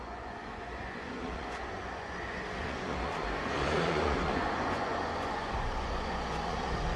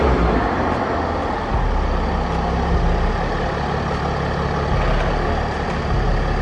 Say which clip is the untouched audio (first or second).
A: second